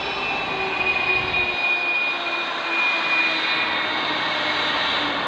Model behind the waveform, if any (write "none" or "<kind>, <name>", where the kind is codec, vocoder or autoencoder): none